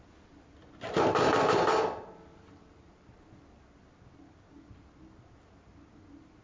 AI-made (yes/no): no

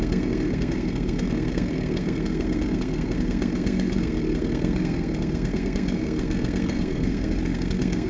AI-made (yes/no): yes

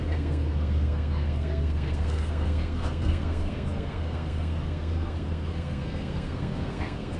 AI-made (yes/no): yes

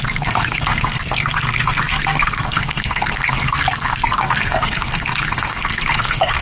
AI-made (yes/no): yes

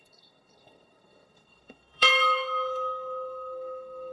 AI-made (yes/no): yes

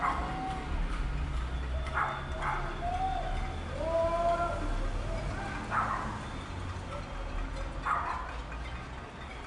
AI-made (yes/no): no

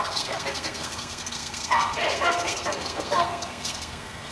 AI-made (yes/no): yes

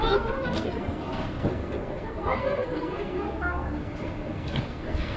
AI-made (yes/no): yes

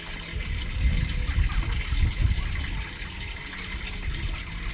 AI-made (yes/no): no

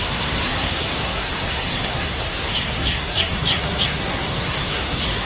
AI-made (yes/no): yes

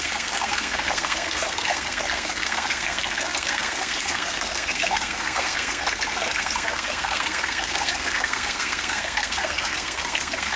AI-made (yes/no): yes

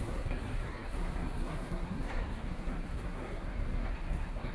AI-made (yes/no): yes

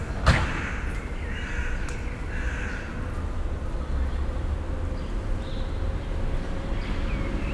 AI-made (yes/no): no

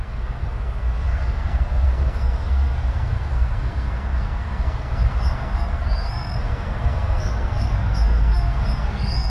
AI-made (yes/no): yes